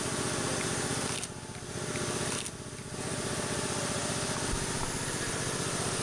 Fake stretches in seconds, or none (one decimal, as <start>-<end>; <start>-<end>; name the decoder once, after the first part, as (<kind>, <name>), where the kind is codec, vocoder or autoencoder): none